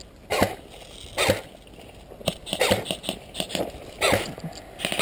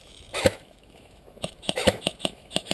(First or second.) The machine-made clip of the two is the second